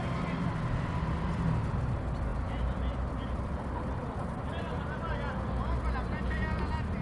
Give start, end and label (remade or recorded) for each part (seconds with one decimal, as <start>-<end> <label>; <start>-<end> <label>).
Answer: 0.0-7.0 recorded